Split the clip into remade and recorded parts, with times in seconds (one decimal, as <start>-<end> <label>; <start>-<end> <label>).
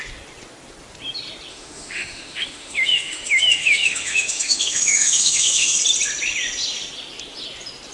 0.0-1.5 recorded; 1.5-5.8 remade; 5.8-7.9 recorded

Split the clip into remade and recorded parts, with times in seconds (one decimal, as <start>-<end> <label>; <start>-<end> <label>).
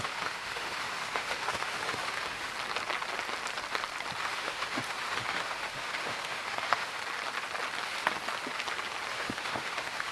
0.0-2.5 remade; 2.5-4.2 recorded; 4.2-7.0 remade; 7.0-9.1 recorded; 9.1-10.1 remade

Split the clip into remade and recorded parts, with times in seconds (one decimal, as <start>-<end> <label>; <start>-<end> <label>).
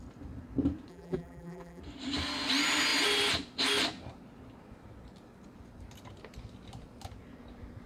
0.0-0.9 recorded; 0.9-1.8 remade; 1.8-7.9 recorded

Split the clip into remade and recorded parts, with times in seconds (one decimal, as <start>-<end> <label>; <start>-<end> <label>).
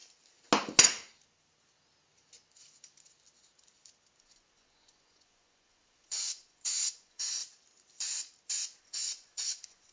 0.0-4.2 recorded; 4.2-7.4 remade; 7.4-8.8 recorded; 8.8-9.9 remade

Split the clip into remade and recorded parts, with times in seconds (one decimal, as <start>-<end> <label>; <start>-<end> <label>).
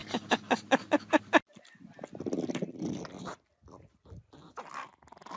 0.0-5.4 recorded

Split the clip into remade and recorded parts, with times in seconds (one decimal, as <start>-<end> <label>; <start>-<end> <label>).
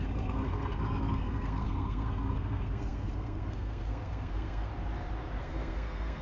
0.0-4.7 remade; 4.7-5.4 recorded; 5.4-6.2 remade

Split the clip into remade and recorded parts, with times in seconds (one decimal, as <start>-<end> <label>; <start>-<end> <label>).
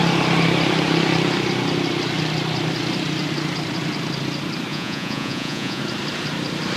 0.0-4.7 recorded; 4.7-5.8 remade; 5.8-6.8 recorded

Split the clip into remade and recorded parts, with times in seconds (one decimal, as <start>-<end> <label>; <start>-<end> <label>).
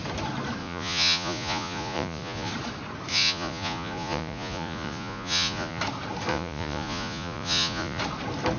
0.0-0.6 recorded; 0.6-2.5 remade; 2.5-3.1 recorded; 3.1-5.8 remade; 5.8-6.3 recorded; 6.3-8.0 remade; 8.0-8.6 recorded